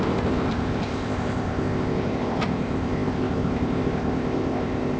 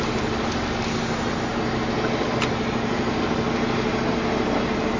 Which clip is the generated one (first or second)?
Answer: first